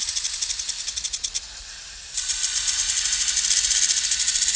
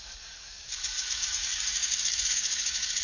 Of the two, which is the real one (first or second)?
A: first